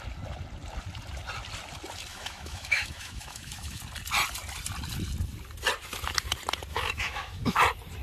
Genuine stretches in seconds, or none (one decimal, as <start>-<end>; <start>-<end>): 0.0-2.1; 3.8-6.7; 7.6-8.0